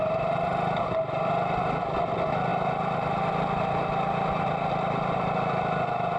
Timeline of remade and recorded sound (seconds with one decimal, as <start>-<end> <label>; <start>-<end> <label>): 0.0-6.2 recorded